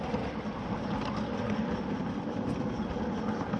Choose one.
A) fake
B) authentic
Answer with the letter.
B